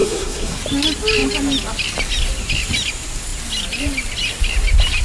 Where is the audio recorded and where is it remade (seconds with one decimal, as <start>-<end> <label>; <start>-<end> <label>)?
0.0-0.6 remade; 0.6-5.0 recorded